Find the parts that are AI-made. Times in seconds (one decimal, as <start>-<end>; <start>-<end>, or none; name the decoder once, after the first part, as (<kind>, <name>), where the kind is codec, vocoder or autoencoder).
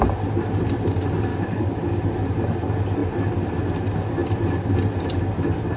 1.3-2.0 (codec, DAC)